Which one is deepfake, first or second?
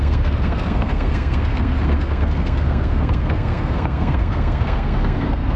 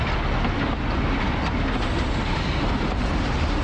first